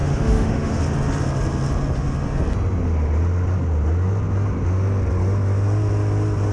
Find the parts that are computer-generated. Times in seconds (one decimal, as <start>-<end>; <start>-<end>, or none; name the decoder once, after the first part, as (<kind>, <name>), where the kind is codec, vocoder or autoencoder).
0.0-0.8 (autoencoder, DAC-VAE)